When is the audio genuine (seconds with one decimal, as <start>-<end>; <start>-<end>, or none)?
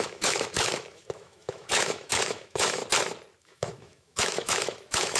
2.8-3.4